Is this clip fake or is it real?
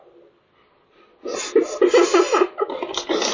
real